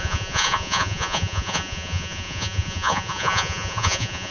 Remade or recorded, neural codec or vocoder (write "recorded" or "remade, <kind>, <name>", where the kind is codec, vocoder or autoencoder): remade, vocoder, Vocos